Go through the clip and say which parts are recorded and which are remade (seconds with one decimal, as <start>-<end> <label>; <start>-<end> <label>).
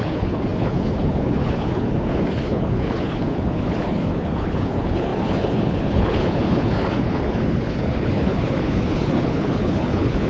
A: 0.0-10.3 remade